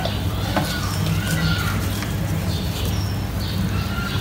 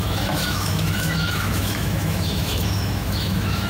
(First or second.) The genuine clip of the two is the first